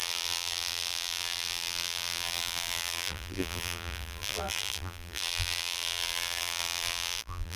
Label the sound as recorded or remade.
remade